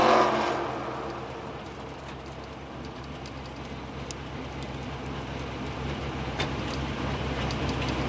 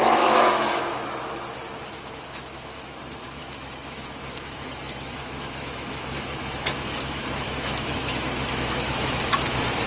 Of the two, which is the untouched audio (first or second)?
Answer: first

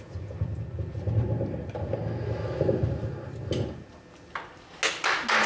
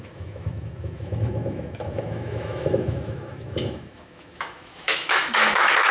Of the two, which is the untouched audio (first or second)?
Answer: first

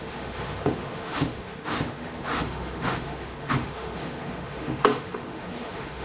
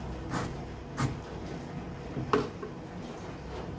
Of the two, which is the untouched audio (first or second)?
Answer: second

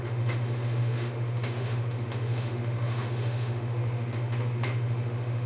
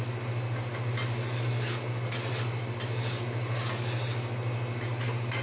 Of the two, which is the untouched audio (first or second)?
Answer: second